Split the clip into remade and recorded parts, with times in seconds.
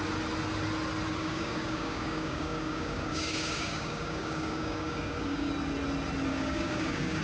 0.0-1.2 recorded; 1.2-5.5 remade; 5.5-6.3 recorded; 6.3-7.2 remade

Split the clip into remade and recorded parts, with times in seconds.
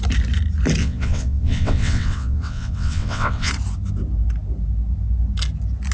0.0-0.8 recorded; 0.8-3.5 remade; 3.5-5.9 recorded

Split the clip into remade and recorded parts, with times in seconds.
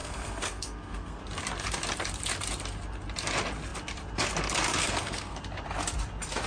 0.0-1.2 remade; 1.2-4.8 recorded; 4.8-5.4 remade; 5.4-6.5 recorded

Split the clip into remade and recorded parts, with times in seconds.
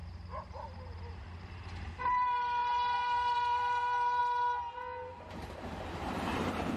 0.0-1.9 recorded; 1.9-4.2 remade; 4.2-5.1 recorded; 5.1-6.8 remade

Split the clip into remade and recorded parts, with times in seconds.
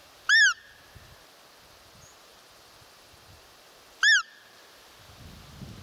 0.0-5.8 recorded